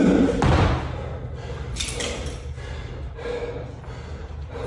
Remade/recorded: recorded